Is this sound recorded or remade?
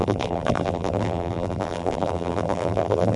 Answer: remade